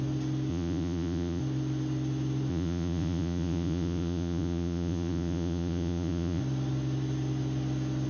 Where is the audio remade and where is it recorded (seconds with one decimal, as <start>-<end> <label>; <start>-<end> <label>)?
0.0-0.5 recorded; 0.5-1.4 remade; 1.4-2.5 recorded; 2.5-6.4 remade; 6.4-8.1 recorded